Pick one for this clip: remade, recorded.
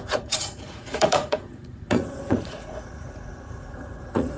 remade